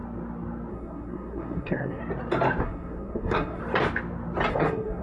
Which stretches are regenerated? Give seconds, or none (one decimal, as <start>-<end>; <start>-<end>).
0.7-2.0; 2.6-3.6; 4.5-5.0